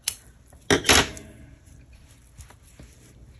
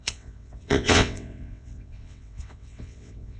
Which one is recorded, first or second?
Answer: first